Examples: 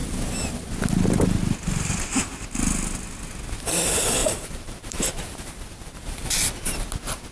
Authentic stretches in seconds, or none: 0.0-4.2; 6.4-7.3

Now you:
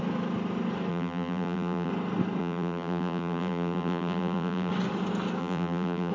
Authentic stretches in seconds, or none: 0.0-0.9; 1.9-2.4; 4.7-5.4